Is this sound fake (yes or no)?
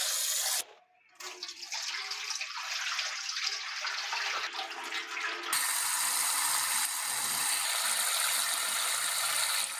no